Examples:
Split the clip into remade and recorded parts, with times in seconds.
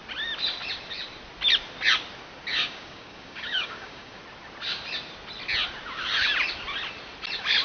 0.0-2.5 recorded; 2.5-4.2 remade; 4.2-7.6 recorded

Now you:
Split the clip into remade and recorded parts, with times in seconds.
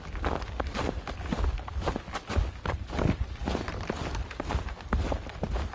0.0-5.7 recorded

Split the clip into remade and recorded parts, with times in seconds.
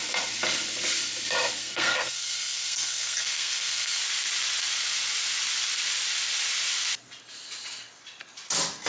0.0-1.6 recorded; 1.6-4.0 remade; 4.0-8.9 recorded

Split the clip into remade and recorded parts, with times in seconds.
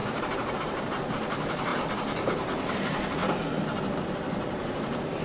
0.0-3.2 remade; 3.2-4.6 recorded; 4.6-5.2 remade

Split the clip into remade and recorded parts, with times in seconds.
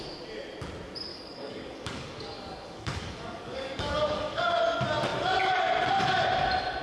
0.0-1.1 recorded; 1.1-4.6 remade; 4.6-6.8 recorded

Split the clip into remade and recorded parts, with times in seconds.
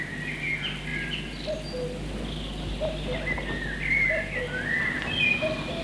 0.0-5.8 recorded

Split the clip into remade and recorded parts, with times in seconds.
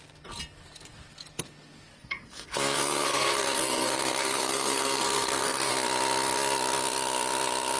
0.0-1.9 recorded; 1.9-5.7 remade; 5.7-7.8 recorded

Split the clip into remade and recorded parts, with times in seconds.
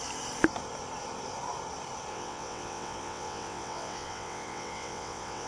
0.0-2.1 recorded; 2.1-5.5 remade